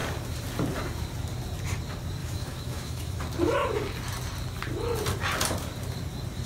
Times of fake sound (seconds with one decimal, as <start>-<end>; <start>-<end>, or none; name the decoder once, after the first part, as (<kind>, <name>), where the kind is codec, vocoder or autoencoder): 2.2-3.2 (autoencoder, DAC-VAE)